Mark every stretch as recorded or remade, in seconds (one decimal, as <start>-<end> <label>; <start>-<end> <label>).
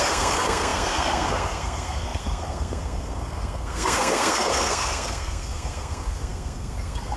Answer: 0.0-7.2 remade